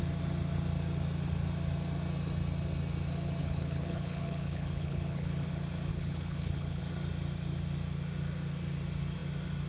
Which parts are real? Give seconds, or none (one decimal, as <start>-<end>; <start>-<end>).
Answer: 0.0-3.4; 5.5-5.9; 6.8-9.7